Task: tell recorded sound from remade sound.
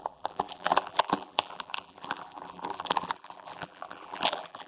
remade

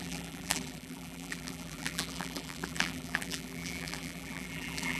remade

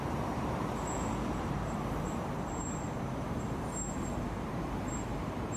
remade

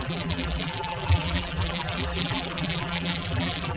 remade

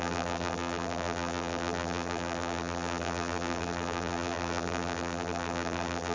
remade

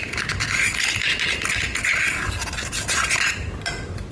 recorded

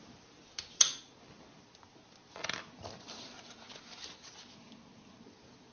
recorded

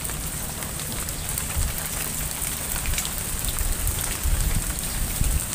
recorded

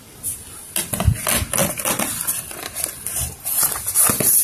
recorded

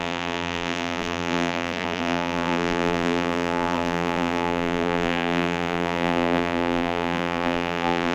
remade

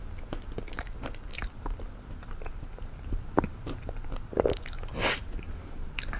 remade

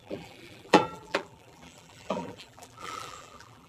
remade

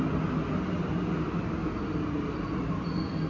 recorded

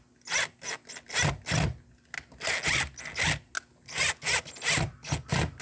recorded